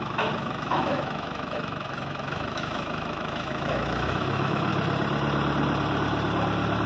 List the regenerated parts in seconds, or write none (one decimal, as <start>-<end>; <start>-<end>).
0.0-4.7